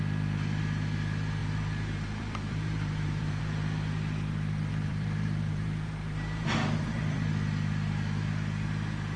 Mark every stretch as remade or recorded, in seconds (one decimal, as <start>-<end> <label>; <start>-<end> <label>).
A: 0.0-1.4 recorded; 1.4-3.4 remade; 3.4-4.7 recorded; 4.7-7.3 remade; 7.3-9.2 recorded